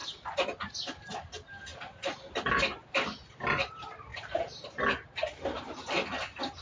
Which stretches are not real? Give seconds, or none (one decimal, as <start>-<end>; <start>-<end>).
4.1-4.8